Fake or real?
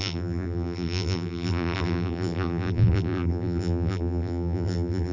fake